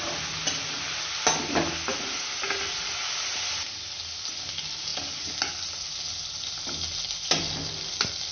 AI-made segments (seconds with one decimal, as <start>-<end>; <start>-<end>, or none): none

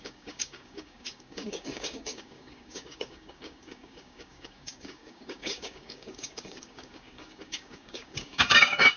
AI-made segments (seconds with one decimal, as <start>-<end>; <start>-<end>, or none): 0.0-9.0

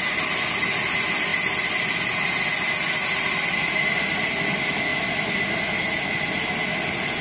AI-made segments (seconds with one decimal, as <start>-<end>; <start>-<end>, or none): none

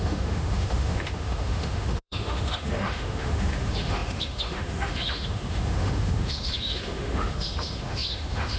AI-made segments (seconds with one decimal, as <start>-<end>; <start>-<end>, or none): 0.0-8.6

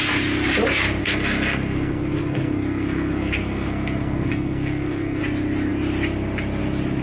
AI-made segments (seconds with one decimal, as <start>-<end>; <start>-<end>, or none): 1.0-5.2